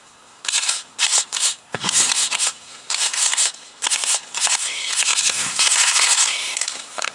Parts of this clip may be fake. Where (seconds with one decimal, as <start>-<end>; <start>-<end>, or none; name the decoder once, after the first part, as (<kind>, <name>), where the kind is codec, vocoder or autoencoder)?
0.0-7.1 (codec, SNAC)